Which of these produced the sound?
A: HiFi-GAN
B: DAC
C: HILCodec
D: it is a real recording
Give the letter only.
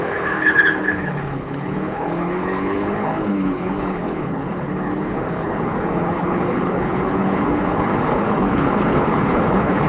C